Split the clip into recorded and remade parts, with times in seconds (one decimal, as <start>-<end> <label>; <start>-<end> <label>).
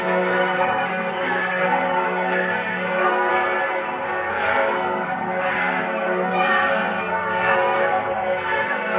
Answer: 0.0-3.3 remade; 3.3-4.3 recorded; 4.3-9.0 remade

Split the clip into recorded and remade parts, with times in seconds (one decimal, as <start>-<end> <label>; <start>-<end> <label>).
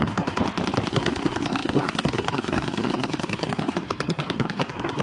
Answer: 0.0-0.4 remade; 0.4-0.9 recorded; 0.9-5.0 remade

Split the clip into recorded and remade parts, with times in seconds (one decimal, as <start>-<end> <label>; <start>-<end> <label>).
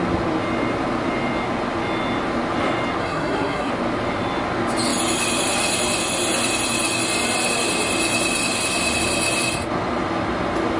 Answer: 0.0-3.0 recorded; 3.0-3.7 remade; 3.7-10.8 recorded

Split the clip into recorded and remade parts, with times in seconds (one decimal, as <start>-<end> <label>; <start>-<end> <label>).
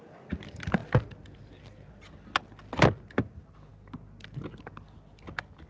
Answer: 0.0-5.7 recorded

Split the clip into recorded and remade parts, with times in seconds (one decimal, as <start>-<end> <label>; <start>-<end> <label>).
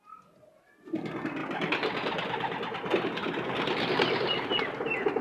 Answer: 0.0-5.2 recorded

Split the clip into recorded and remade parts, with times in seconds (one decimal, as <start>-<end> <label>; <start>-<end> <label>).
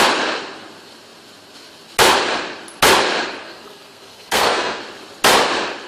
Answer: 0.0-3.4 recorded; 3.4-4.8 remade; 4.8-5.9 recorded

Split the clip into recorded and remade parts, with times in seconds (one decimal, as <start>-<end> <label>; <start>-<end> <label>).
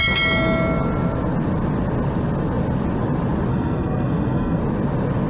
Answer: 0.0-3.5 recorded; 3.5-4.6 remade; 4.6-5.3 recorded